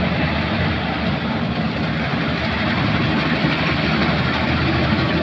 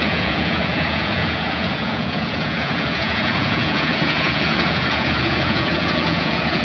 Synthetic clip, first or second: second